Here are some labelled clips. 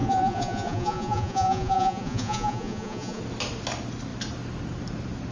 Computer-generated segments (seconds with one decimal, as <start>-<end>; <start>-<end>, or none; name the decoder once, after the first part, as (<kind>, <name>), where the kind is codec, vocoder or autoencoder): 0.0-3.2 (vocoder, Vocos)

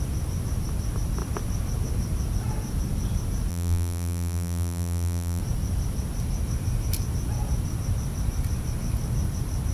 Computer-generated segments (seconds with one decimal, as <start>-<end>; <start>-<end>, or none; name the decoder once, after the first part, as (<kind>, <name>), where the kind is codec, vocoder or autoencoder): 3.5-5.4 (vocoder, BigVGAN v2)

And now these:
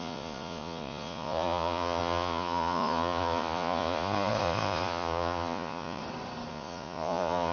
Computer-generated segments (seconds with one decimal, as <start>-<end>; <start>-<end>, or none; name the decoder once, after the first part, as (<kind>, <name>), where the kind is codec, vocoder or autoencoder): 0.0-6.0 (vocoder, Vocos); 6.5-7.5

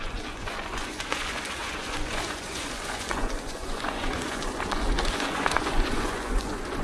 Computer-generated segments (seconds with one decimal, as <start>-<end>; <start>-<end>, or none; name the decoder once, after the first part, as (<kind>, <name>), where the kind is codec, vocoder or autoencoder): 0.0-6.8 (vocoder, Vocos)

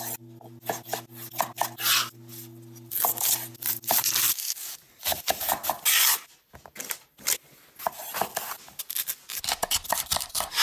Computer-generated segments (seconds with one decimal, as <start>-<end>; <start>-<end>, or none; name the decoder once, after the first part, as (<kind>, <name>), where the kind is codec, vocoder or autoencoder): none

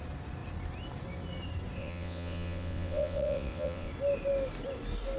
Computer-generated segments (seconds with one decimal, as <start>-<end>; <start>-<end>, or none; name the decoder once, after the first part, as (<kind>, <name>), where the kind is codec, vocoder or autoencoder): 1.8-3.9 (vocoder, WaveNeXt)

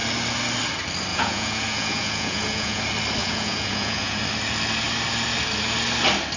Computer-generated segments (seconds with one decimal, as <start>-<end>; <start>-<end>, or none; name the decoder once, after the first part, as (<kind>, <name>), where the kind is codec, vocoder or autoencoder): 1.1-2.8 (vocoder, Vocos); 3.2-4.2

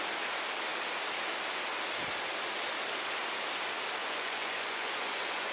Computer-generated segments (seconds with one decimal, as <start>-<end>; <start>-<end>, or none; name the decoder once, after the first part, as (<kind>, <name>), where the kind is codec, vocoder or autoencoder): 4.0-5.5 (vocoder, Vocos)